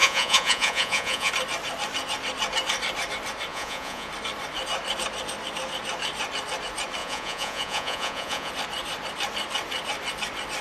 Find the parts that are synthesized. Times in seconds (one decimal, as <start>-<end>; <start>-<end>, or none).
0.0-1.3; 3.5-4.1; 7.0-8.5